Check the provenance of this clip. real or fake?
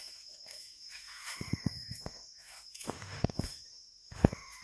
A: fake